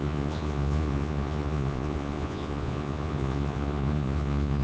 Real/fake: fake